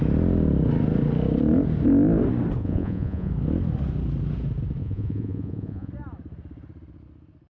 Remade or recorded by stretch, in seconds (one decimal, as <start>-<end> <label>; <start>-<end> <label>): 0.0-2.6 recorded; 2.6-3.3 remade; 3.3-4.8 recorded; 4.8-5.9 remade; 5.9-7.5 recorded